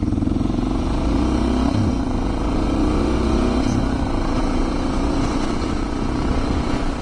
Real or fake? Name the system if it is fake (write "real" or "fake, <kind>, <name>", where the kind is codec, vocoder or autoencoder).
fake, vocoder, Vocos